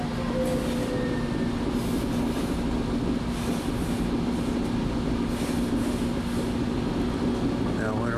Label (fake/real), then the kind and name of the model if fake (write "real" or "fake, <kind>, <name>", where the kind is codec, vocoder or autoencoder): real